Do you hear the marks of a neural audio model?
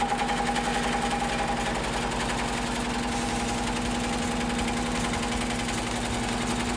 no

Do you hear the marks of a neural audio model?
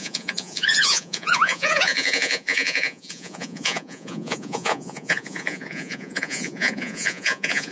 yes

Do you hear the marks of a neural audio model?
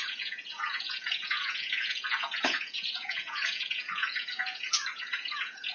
yes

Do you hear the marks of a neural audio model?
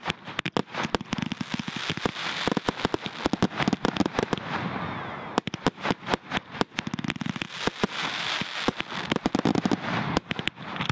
no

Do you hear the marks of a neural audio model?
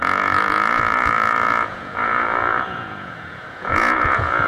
yes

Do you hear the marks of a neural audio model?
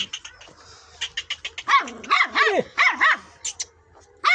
no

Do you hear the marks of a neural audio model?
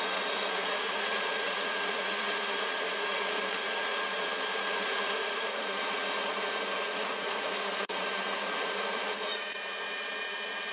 yes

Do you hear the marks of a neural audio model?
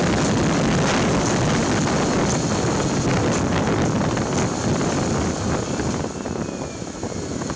no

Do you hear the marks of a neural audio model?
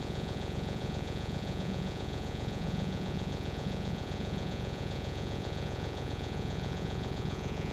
yes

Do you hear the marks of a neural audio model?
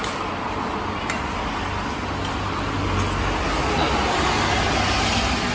no